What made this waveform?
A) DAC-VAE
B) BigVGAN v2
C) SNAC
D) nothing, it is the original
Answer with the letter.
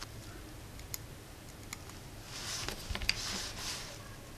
D